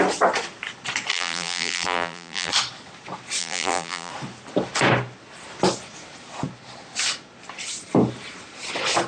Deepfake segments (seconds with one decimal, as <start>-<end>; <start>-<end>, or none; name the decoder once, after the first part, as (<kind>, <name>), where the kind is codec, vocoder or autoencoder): 1.1-2.5 (vocoder, BigVGAN v2); 3.4-4.1